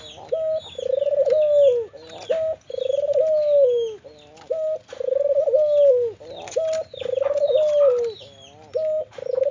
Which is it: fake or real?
real